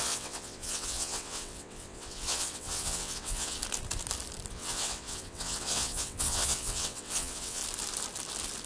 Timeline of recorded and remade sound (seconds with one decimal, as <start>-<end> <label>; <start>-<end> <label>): 0.0-3.6 remade; 3.6-4.5 recorded; 4.5-7.6 remade; 7.6-8.7 recorded